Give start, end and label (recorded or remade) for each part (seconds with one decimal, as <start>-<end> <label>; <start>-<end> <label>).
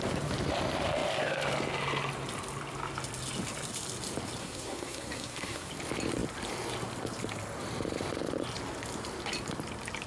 0.0-4.4 recorded; 4.4-5.7 remade; 5.7-10.1 recorded